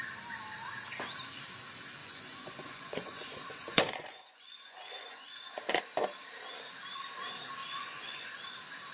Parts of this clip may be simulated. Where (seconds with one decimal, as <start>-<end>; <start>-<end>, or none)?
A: 2.0-5.8; 7.6-8.3